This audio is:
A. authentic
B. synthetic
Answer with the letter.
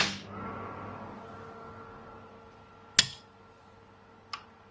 A